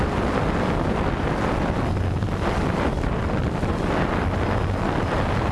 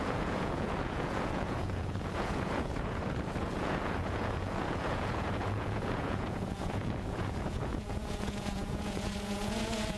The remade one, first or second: second